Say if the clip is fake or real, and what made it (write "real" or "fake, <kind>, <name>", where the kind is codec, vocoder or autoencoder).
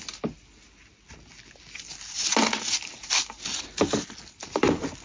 real